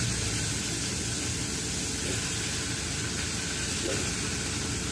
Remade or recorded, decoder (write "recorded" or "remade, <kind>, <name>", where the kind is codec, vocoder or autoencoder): recorded